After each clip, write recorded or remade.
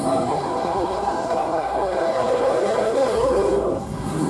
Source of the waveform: remade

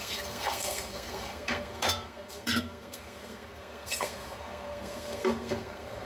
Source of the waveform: remade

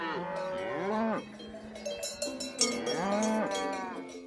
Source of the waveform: recorded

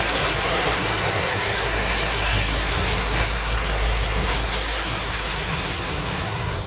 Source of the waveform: remade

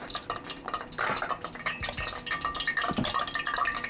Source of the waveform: recorded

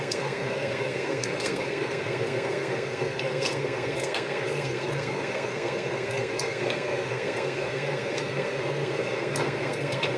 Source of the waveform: remade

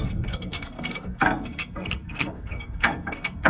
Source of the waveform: remade